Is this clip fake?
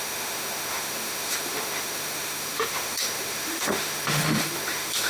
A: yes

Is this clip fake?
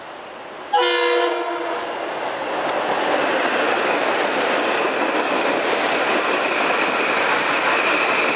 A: no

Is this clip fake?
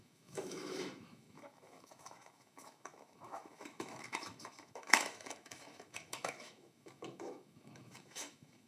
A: yes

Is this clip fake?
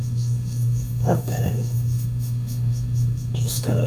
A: yes